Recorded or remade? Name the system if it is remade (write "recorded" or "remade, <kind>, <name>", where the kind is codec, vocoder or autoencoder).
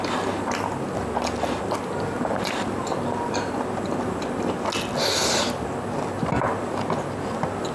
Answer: recorded